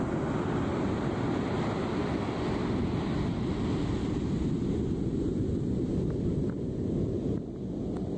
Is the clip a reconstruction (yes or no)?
no